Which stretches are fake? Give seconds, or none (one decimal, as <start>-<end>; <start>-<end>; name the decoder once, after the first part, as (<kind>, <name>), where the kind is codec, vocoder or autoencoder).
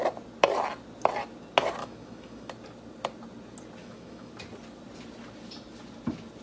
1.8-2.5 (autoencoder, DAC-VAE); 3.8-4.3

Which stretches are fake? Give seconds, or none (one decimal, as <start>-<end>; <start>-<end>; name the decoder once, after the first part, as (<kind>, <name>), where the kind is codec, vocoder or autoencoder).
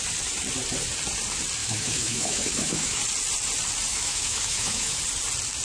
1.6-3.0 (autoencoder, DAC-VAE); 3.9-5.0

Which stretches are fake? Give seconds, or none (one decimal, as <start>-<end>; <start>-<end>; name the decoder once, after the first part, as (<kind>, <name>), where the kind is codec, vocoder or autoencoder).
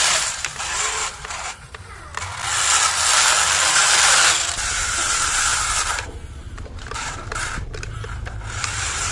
0.0-2.1 (vocoder, BigVGAN v2); 3.7-9.1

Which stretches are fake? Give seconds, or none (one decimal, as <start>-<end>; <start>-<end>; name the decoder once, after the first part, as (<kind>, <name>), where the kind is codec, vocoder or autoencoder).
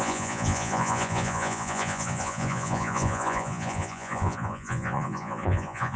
0.0-6.0 (vocoder, Vocos)